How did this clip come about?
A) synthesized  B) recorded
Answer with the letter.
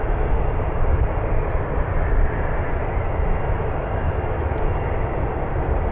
B